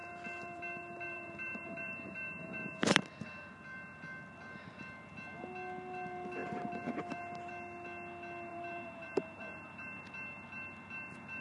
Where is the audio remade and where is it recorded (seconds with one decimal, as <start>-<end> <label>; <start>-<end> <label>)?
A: 0.0-3.0 remade; 3.0-6.4 recorded; 6.4-7.5 remade; 7.5-8.5 recorded; 8.5-10.0 remade; 10.0-11.4 recorded